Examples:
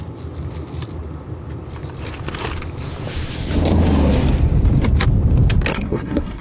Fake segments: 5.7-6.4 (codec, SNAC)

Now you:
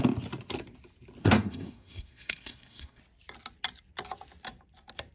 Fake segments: 1.2-3.0 (codec, SNAC)

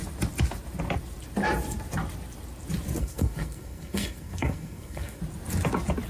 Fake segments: 3.0-5.2 (codec, SNAC)